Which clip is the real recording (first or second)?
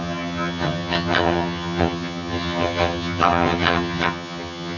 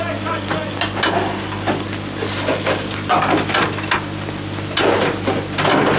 second